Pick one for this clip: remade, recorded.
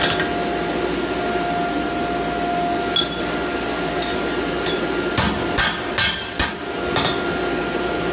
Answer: recorded